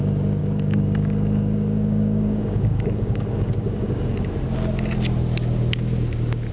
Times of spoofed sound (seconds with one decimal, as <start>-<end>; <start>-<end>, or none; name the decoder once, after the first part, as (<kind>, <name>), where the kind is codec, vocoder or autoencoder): 0.4-4.3 (codec, DAC)